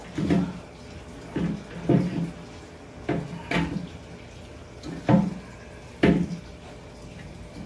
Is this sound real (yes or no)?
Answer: yes